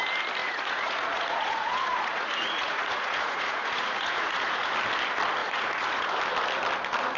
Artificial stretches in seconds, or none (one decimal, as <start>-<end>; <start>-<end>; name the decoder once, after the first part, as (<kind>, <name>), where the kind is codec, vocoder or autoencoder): 0.4-4.7 (vocoder, Vocos); 5.4-6.1